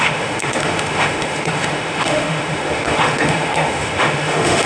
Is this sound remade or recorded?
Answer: remade